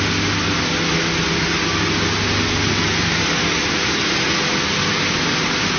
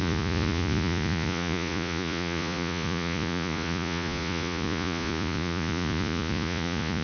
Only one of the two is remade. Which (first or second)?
second